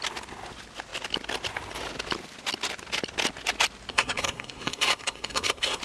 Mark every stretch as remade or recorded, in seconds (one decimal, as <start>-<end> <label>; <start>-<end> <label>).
0.0-3.9 recorded; 3.9-5.8 remade

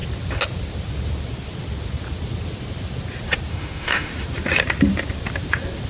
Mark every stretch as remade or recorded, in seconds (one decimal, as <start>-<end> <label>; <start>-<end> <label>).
0.0-3.5 recorded; 3.5-4.1 remade; 4.1-5.9 recorded

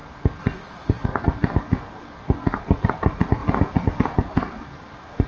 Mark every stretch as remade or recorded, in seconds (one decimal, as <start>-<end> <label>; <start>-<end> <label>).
0.0-0.7 recorded; 0.7-1.1 remade; 1.1-2.6 recorded; 2.6-3.4 remade; 3.4-4.0 recorded; 4.0-5.3 remade

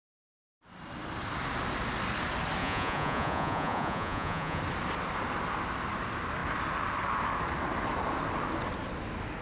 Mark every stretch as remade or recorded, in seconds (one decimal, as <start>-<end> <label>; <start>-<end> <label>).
0.0-2.6 recorded; 2.6-4.6 remade; 4.6-9.4 recorded

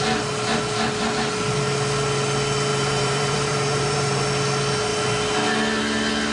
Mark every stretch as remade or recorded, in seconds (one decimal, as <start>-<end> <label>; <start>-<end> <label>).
0.0-2.7 recorded; 2.7-4.2 remade; 4.2-6.3 recorded

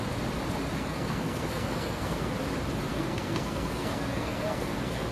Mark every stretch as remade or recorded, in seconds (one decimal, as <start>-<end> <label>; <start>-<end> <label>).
0.0-0.8 recorded; 0.8-2.3 remade; 2.3-2.9 recorded; 2.9-5.1 remade

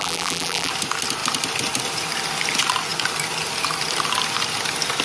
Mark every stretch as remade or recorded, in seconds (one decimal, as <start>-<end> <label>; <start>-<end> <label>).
0.0-0.7 remade; 0.7-5.0 recorded

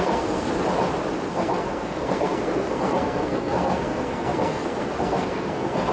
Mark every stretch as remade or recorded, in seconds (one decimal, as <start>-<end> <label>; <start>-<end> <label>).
0.0-0.5 remade; 0.5-1.3 recorded; 1.3-5.9 remade